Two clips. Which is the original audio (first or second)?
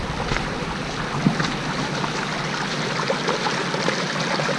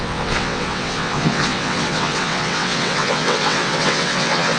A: first